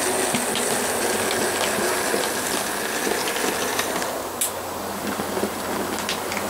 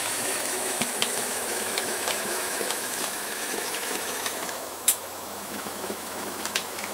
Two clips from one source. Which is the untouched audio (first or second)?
first